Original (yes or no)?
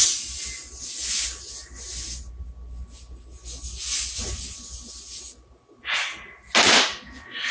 yes